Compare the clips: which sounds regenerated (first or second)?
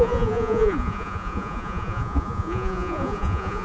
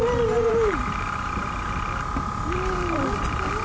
first